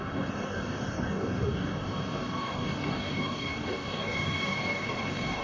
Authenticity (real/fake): fake